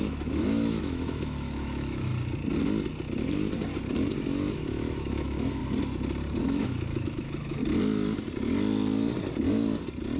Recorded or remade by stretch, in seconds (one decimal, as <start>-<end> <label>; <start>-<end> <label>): 0.0-2.1 remade; 2.1-4.5 recorded; 4.5-5.6 remade; 5.6-6.4 recorded; 6.4-7.6 remade; 7.6-10.2 recorded